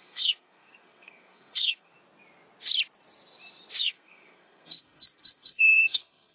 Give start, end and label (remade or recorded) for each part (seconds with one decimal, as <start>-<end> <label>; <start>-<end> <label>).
0.0-1.9 remade; 1.9-3.8 recorded; 3.8-6.3 remade